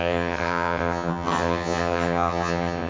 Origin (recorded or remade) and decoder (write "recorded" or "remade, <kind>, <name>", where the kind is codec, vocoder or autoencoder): remade, vocoder, HiFi-GAN